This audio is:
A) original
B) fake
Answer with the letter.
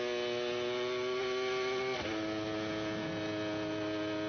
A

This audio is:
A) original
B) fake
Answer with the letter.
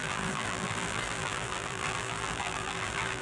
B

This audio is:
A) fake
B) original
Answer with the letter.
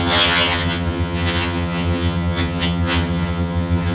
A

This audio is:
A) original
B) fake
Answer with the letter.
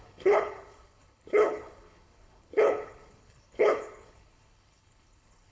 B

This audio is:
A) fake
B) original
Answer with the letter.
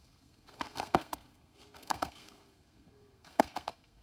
A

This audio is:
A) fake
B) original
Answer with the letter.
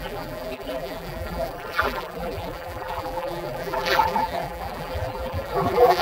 A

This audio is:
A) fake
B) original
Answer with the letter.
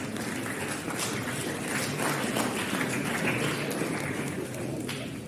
B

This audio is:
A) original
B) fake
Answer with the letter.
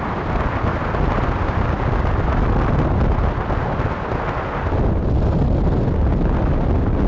A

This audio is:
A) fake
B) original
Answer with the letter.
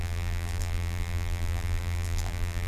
A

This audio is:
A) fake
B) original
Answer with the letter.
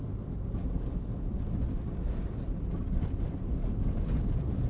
A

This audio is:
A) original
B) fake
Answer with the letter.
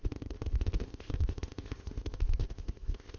B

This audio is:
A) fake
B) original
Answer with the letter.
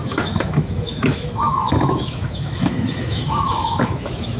A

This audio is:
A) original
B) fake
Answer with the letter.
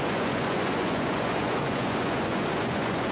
B